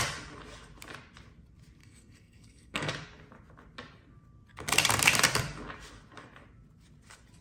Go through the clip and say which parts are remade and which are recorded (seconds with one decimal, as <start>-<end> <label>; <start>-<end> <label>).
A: 0.0-1.8 recorded; 1.8-2.9 remade; 2.9-7.4 recorded